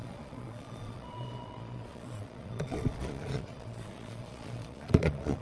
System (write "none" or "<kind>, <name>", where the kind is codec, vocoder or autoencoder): vocoder, Vocos